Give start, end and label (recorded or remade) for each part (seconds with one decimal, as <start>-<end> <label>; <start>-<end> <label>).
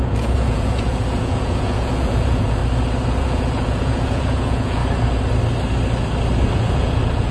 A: 0.0-2.6 remade; 2.6-3.2 recorded; 3.2-4.8 remade; 4.8-6.5 recorded; 6.5-7.3 remade